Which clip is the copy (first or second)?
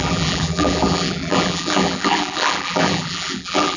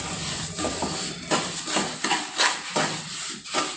first